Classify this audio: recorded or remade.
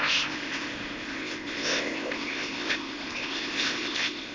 remade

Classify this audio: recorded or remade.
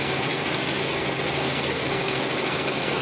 remade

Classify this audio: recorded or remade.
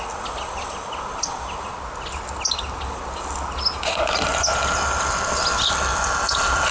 recorded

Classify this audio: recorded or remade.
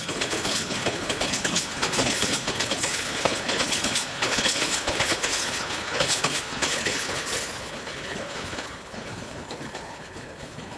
remade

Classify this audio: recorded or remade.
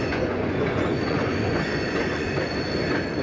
remade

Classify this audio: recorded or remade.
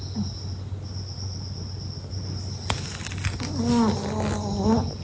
recorded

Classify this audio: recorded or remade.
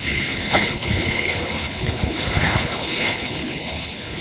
remade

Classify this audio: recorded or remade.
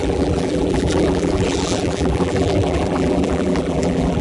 remade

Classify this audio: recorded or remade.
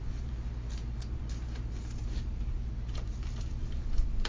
remade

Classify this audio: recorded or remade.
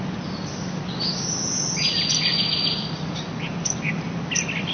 recorded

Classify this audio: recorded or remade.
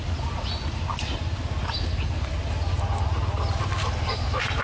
recorded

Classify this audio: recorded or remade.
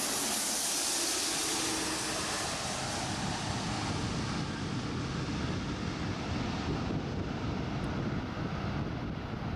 recorded